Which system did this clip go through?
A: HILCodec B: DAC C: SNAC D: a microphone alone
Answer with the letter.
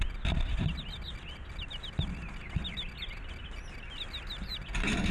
D